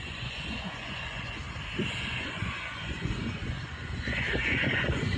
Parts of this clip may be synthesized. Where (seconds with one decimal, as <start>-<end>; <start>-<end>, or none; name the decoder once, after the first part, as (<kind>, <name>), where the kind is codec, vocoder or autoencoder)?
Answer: 0.0-1.4 (vocoder, Vocos); 1.9-5.2